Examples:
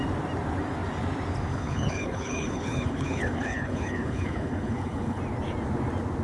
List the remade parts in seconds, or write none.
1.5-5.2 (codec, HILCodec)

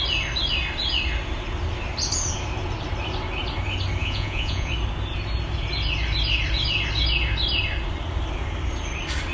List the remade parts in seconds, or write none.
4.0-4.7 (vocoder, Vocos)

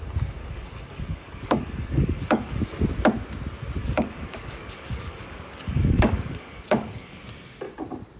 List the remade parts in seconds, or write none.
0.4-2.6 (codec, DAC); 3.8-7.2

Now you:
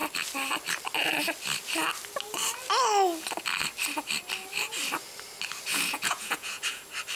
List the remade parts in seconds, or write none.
5.7-6.8 (vocoder, Vocos)

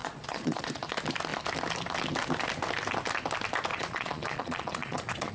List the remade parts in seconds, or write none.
0.0-0.9 (vocoder, Vocos); 3.7-5.3

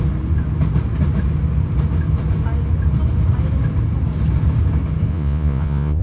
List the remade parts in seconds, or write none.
5.1-6.0 (vocoder, Vocos)

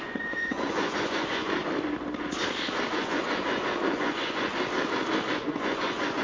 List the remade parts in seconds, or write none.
0.0-1.6 (vocoder, Vocos); 2.9-4.5; 5.3-6.2